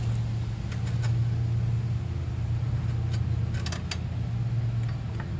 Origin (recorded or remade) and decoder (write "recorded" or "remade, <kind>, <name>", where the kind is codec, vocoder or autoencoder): recorded